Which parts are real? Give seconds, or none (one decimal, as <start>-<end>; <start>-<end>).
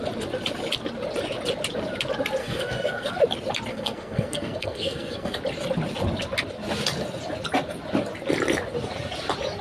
0.0-2.4; 3.2-3.7; 5.4-9.6